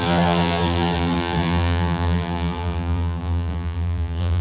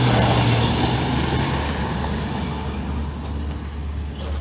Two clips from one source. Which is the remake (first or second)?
first